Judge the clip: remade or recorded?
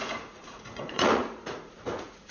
remade